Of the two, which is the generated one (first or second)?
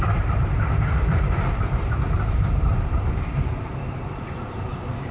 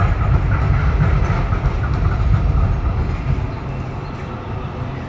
first